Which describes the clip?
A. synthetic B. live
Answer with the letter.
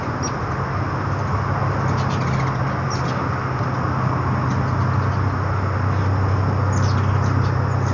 B